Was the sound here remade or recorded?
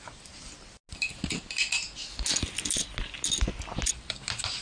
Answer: recorded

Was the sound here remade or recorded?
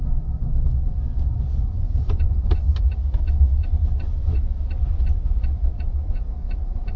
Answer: recorded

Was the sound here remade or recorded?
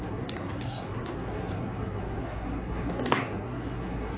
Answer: remade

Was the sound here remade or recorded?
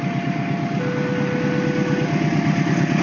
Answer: recorded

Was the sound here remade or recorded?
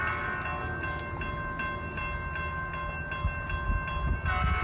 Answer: recorded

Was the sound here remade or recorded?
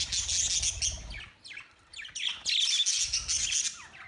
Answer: recorded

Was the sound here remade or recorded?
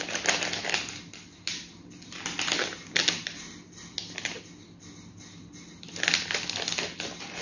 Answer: recorded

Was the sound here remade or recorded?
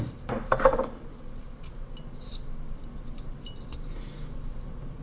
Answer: recorded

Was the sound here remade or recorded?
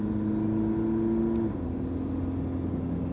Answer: recorded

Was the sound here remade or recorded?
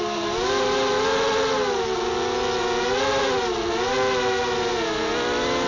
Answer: recorded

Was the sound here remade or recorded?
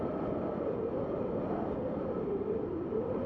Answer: recorded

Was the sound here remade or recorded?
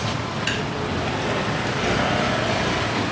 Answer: recorded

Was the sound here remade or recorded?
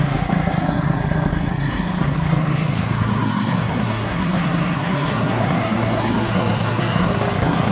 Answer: remade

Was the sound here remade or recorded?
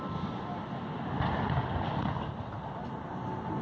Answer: recorded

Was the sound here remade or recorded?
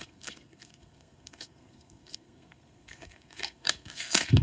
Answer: remade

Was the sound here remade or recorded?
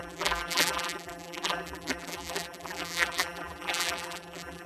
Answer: remade